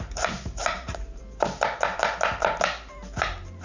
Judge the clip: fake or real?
fake